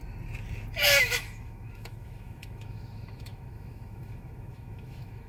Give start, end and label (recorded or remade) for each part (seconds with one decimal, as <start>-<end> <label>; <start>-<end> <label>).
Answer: 0.0-1.0 recorded; 1.0-5.3 remade